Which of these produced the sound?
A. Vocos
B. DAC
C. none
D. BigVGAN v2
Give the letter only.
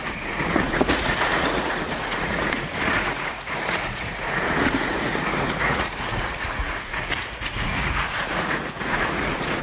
A